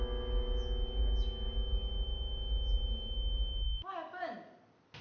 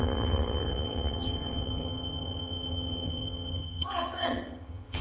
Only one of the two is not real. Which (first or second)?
second